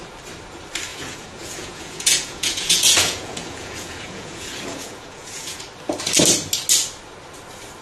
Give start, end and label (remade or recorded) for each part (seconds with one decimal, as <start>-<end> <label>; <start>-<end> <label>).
0.0-0.9 recorded; 0.9-5.6 remade; 5.6-7.8 recorded